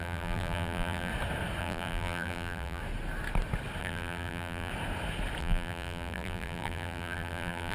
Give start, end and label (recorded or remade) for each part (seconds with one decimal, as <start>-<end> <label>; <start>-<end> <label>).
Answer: 0.0-1.1 remade; 1.1-1.6 recorded; 1.6-2.8 remade; 2.8-3.8 recorded; 3.8-4.7 remade; 4.7-5.4 recorded; 5.4-7.7 remade